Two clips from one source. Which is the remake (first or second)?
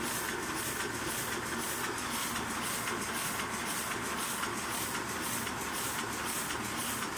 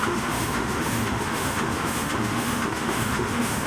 second